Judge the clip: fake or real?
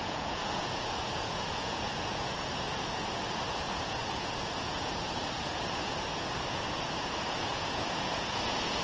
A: fake